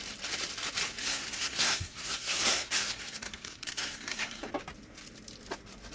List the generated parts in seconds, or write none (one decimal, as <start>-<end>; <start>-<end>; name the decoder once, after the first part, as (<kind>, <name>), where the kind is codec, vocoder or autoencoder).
1.0-4.5 (codec, SNAC)